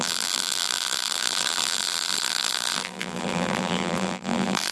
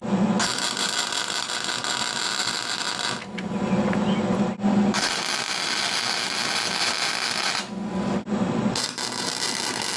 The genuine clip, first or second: second